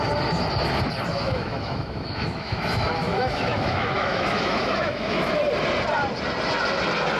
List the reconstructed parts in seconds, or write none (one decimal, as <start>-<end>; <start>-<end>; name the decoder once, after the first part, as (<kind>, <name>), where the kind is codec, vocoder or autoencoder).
1.1-5.4 (autoencoder, DAC-VAE)